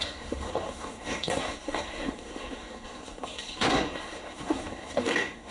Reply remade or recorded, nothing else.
remade